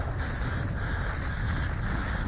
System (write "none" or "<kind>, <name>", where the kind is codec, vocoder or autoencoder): none